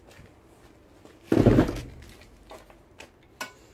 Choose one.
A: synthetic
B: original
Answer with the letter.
B